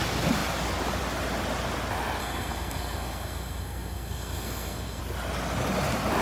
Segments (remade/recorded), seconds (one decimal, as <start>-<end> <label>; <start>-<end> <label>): 0.0-2.2 recorded; 2.2-5.0 remade; 5.0-6.2 recorded